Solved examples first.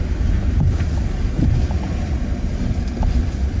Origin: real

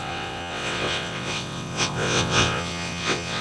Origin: fake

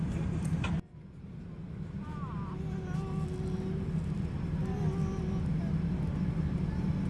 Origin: real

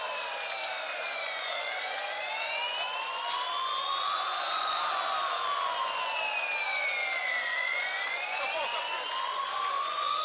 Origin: fake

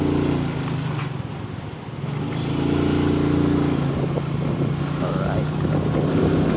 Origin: real